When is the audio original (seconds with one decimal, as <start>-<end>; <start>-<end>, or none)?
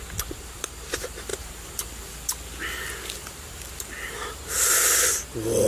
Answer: 0.0-5.7